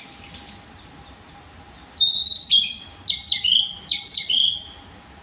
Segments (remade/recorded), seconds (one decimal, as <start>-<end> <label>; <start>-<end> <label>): 0.0-5.2 recorded

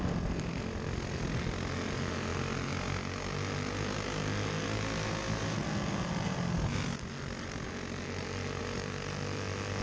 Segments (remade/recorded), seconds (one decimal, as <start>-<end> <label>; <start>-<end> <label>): 0.0-9.8 recorded

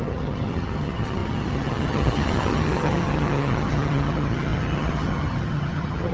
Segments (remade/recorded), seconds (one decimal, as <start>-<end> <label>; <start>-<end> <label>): 0.0-6.1 remade

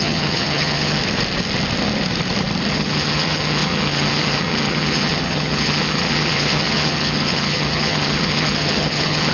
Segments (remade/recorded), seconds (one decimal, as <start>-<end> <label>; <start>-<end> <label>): 0.0-1.0 remade; 1.0-2.7 recorded; 2.7-9.3 remade